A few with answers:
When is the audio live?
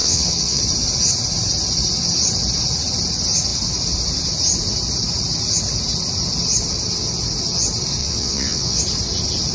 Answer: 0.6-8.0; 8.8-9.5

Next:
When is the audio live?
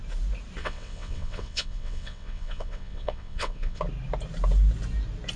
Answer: 0.0-0.6; 3.8-5.4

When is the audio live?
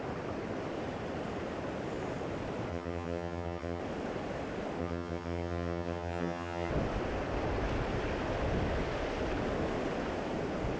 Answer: 0.0-2.7; 3.8-4.8; 6.7-10.8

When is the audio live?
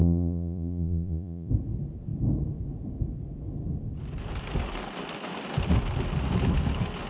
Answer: 1.5-7.1